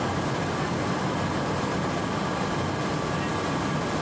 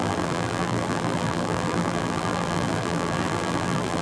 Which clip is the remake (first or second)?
second